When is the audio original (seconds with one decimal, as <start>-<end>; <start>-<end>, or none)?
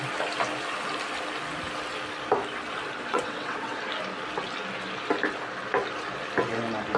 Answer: 0.0-3.1; 3.8-7.0